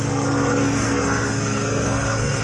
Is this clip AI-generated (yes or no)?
yes